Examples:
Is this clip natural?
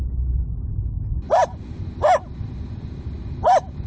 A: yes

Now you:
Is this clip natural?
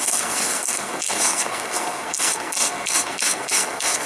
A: no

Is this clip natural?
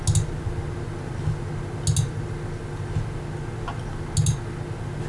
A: yes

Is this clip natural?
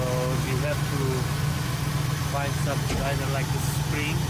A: yes